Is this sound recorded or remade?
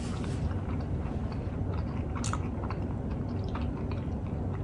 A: recorded